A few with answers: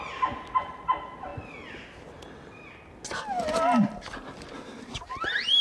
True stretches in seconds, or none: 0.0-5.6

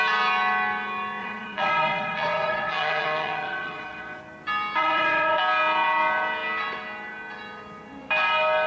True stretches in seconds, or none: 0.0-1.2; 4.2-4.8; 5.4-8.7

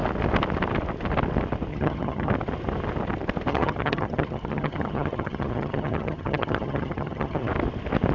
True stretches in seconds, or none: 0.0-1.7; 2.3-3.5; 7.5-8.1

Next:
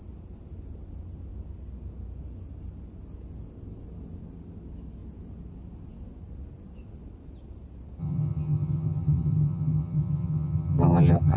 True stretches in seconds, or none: 0.0-8.0

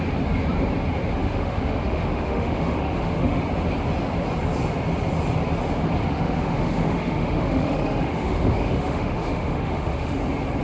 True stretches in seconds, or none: 0.0-1.2; 3.4-6.0; 10.2-10.6

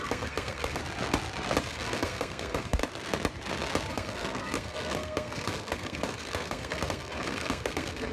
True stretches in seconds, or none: 0.8-1.6; 2.8-3.9

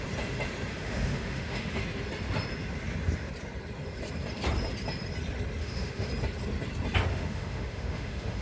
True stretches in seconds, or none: 0.0-0.7; 1.8-5.6; 6.1-7.1

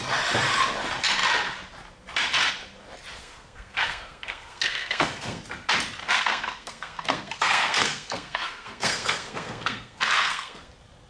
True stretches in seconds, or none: 0.0-3.2; 5.4-6.0; 10.7-11.1